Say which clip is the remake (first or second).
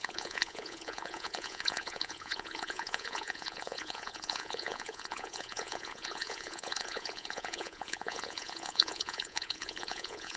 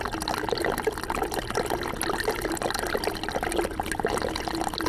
first